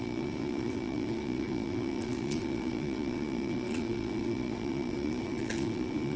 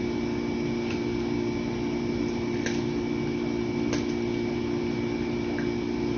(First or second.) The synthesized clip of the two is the first